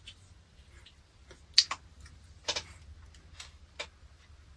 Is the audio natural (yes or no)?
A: yes